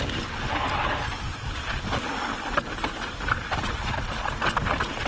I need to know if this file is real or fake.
real